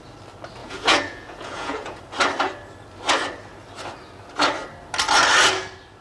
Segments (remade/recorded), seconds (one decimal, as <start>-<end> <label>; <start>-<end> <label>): 0.0-0.6 recorded; 0.6-2.0 remade; 2.0-6.0 recorded